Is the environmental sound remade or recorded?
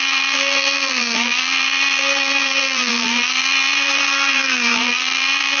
remade